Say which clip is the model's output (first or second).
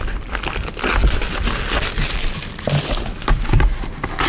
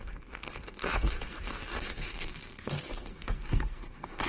second